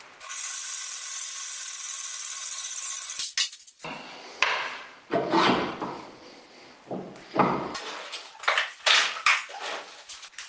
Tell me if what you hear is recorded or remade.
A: recorded